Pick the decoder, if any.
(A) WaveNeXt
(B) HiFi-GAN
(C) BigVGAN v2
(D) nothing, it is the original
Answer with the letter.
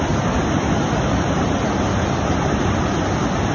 D